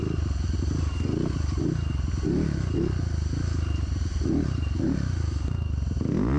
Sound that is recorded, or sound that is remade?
recorded